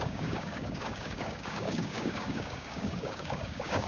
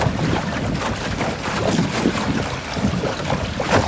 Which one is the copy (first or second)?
first